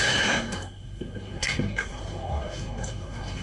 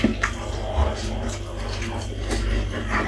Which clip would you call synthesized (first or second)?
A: first